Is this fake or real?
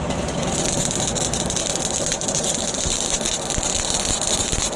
real